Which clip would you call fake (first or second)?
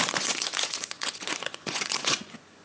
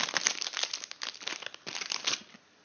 first